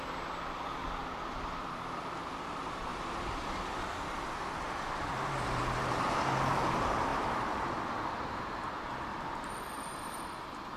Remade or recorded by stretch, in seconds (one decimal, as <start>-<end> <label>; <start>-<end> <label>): 0.0-1.0 recorded; 1.0-2.0 remade; 2.0-2.9 recorded; 2.9-3.8 remade; 3.8-7.1 recorded; 7.1-7.8 remade; 7.8-9.1 recorded; 9.1-10.2 remade; 10.2-10.8 recorded